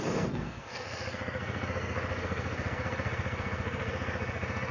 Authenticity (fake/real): fake